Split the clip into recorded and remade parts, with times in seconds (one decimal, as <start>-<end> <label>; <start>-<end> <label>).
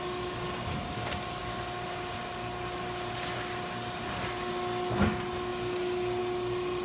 0.0-6.8 recorded